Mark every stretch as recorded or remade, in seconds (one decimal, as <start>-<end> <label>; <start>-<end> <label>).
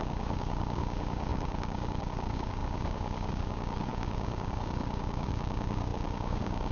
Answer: 0.0-6.7 remade